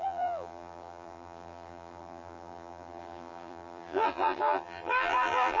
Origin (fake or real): fake